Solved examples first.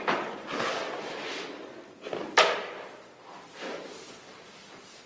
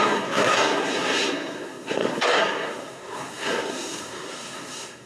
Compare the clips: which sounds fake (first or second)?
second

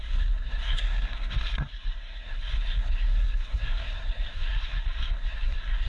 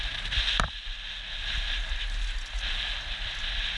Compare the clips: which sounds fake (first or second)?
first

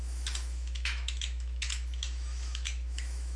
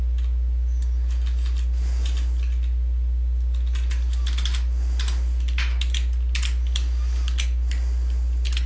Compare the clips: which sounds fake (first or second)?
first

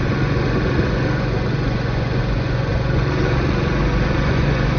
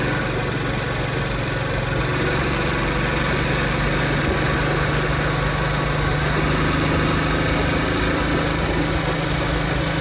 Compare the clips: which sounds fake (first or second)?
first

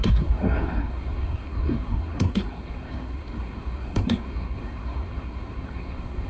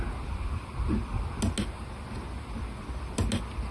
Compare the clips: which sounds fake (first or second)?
first